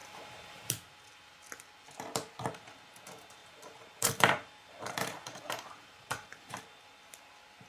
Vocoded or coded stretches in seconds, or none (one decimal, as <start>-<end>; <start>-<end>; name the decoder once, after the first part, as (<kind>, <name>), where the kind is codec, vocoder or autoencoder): 0.0-0.7 (vocoder, BigVGAN v2); 3.4-6.6